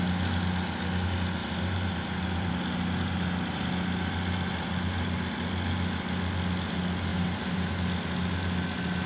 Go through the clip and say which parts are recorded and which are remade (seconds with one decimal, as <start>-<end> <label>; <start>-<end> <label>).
0.0-1.4 recorded; 1.4-2.5 remade; 2.5-7.1 recorded; 7.1-7.7 remade; 7.7-9.1 recorded